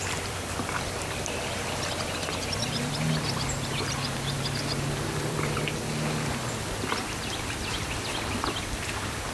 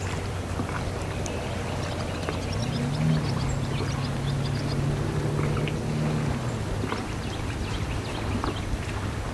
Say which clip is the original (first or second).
second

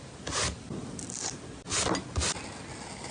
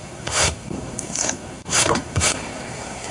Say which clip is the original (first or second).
first